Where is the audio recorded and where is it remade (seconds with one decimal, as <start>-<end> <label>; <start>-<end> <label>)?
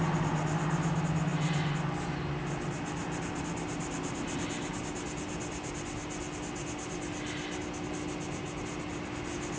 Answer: 0.0-9.6 recorded